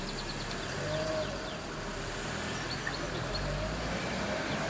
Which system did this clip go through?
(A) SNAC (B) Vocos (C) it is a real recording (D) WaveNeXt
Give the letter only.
C